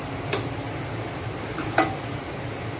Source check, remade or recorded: remade